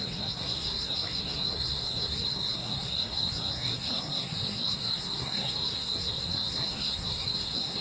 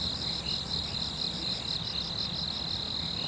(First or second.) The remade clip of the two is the first